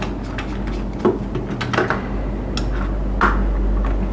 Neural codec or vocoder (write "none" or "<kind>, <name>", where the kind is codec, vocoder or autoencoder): none